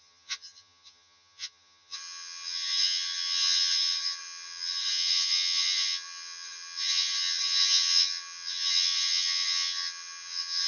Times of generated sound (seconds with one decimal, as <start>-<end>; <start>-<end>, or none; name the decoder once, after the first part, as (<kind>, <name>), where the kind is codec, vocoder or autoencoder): 0.0-10.7 (vocoder, HiFi-GAN)